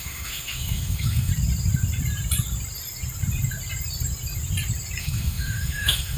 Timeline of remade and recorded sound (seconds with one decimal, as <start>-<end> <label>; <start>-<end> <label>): 0.0-1.3 remade; 1.3-5.0 recorded; 5.0-6.2 remade